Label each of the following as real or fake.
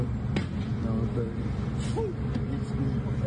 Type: fake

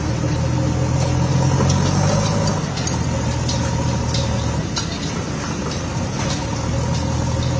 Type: real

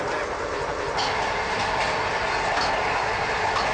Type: real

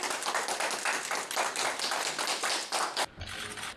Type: real